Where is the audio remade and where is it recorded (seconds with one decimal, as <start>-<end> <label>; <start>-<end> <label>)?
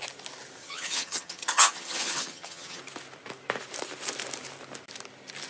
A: 0.0-0.6 recorded; 0.6-2.8 remade; 2.8-5.5 recorded